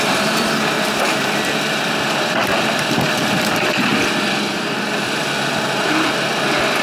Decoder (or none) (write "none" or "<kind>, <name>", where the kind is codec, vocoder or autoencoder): vocoder, BigVGAN v2